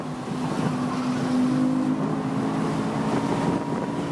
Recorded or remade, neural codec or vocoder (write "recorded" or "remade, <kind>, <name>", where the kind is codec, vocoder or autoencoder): recorded